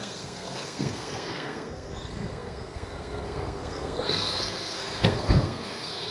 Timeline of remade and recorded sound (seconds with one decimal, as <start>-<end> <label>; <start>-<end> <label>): 0.0-6.1 remade